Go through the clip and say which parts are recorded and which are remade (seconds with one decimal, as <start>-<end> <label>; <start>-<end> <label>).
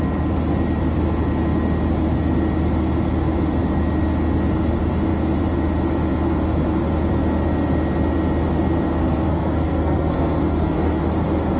0.0-9.0 recorded; 9.0-11.0 remade; 11.0-11.6 recorded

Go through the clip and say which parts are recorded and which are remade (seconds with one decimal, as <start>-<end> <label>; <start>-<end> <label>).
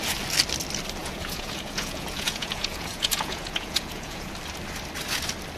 0.0-1.0 recorded; 1.0-4.3 remade; 4.3-5.6 recorded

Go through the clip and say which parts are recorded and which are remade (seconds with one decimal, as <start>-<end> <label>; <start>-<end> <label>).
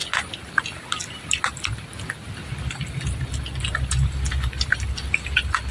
0.0-5.7 recorded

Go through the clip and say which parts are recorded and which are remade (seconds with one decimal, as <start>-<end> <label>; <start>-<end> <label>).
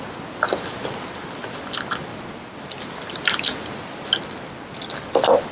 0.0-5.5 recorded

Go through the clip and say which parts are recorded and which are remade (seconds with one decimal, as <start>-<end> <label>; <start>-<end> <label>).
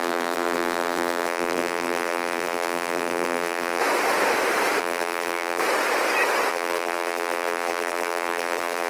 0.0-3.8 remade; 3.8-4.8 recorded; 4.8-5.6 remade; 5.6-6.5 recorded; 6.5-8.9 remade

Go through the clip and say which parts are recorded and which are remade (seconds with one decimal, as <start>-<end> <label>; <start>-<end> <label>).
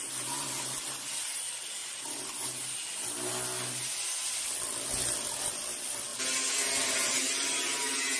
0.0-8.2 recorded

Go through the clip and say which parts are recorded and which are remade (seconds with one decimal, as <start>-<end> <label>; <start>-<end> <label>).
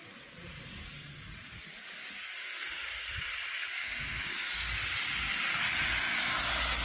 0.0-2.0 recorded; 2.0-2.6 remade; 2.6-3.7 recorded; 3.7-4.3 remade; 4.3-6.8 recorded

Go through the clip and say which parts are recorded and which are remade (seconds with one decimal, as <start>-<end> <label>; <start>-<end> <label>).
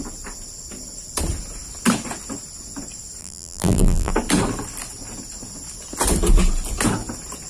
0.0-3.2 recorded; 3.2-4.1 remade; 4.1-7.5 recorded